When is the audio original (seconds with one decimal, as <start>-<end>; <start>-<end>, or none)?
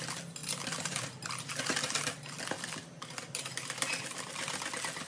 0.0-5.1